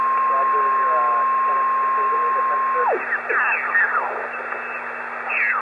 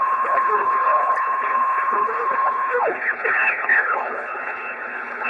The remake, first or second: second